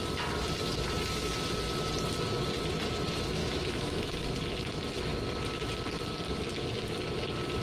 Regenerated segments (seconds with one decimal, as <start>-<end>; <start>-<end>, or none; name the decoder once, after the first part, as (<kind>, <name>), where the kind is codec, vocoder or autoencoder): 3.4-4.3 (autoencoder, DAC-VAE)